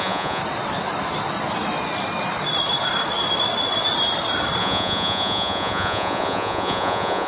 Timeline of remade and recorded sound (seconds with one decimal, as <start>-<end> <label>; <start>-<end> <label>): 0.0-0.4 remade; 0.4-4.6 recorded; 4.6-7.3 remade